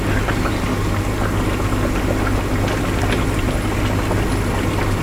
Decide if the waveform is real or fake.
real